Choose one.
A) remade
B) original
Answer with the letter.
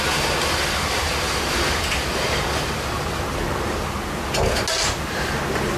B